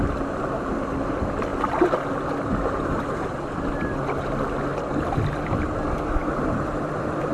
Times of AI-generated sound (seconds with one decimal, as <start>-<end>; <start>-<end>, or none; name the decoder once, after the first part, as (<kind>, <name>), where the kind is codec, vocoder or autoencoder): 1.5-3.7 (vocoder, BigVGAN v2); 4.7-5.8; 6.2-7.3